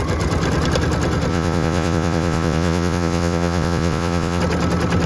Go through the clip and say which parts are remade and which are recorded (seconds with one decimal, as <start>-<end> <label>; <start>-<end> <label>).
0.0-1.3 recorded; 1.3-4.4 remade; 4.4-5.1 recorded